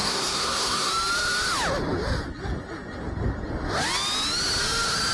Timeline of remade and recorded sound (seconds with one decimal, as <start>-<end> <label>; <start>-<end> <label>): 0.0-0.9 remade; 0.9-5.1 recorded